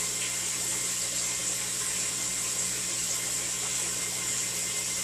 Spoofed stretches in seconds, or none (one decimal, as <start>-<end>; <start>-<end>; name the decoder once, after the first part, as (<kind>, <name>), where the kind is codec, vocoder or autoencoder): none